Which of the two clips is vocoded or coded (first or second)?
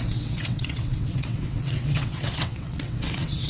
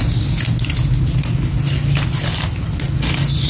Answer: first